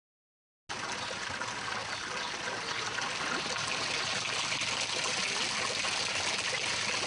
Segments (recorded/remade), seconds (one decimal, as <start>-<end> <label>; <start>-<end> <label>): 0.0-1.8 recorded; 1.8-3.8 remade; 3.8-7.1 recorded